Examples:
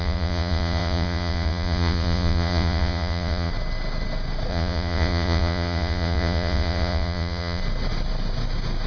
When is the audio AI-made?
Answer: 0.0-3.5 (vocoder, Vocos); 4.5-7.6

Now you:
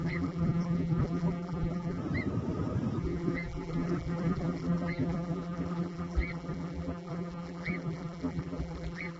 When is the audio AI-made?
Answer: 0.0-2.0 (vocoder, BigVGAN v2); 3.0-9.2

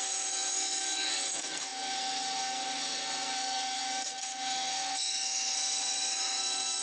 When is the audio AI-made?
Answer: 0.0-6.8 (codec, SNAC)

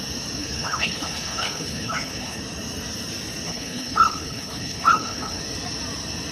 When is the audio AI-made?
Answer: 0.4-2.4 (codec, HILCodec); 3.5-5.4